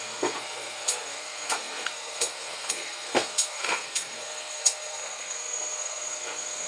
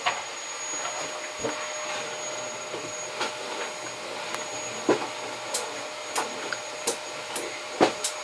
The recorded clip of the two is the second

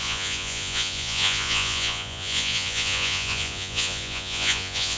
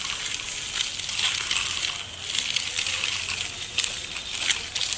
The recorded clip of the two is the second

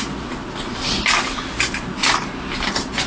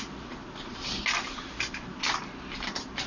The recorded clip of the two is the first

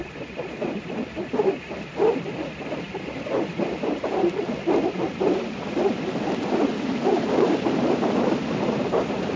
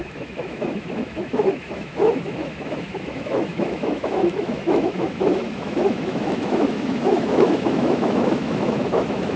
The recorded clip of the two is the first